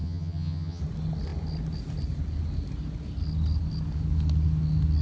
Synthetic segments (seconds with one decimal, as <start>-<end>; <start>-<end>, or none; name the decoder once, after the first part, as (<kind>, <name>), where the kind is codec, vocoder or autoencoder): 0.0-0.8 (vocoder, HiFi-GAN)